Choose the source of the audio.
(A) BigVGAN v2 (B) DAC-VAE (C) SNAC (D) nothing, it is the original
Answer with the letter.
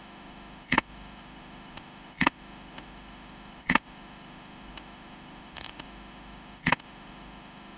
B